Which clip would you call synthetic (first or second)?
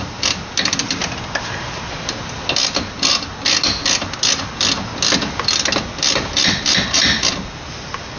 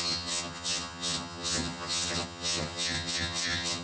second